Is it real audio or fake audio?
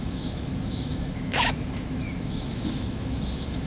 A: fake